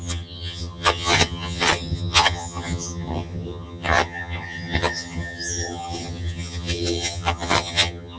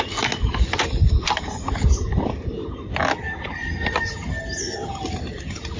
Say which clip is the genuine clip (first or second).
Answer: second